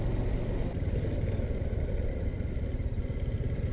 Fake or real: real